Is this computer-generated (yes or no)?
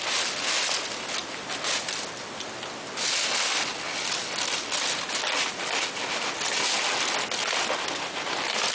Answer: no